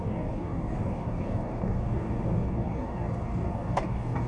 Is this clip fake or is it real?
fake